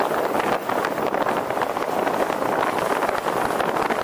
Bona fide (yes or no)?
yes